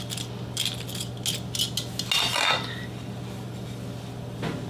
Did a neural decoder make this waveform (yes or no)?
no